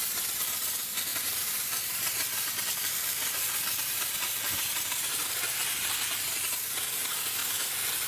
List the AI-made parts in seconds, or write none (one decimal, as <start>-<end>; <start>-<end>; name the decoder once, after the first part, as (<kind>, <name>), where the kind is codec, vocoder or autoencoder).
1.1-6.0 (vocoder, BigVGAN v2)